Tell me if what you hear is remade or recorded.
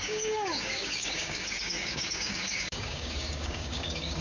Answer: remade